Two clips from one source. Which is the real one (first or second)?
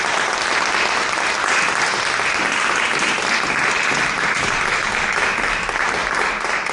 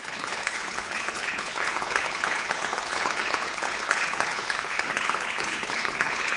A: first